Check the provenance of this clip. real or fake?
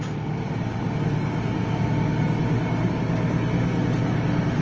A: real